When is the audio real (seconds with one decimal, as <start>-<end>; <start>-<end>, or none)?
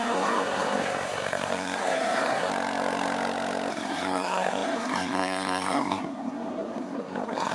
2.5-3.7